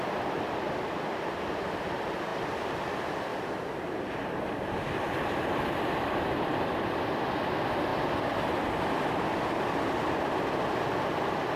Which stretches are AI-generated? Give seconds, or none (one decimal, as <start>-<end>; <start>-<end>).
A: 0.0-2.3; 2.8-3.3; 5.5-11.6